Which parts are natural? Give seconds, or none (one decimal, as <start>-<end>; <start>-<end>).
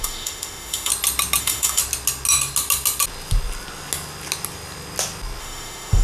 0.9-1.4; 1.8-5.4